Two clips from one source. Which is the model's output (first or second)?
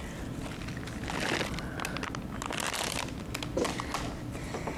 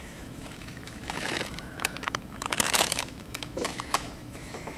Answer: second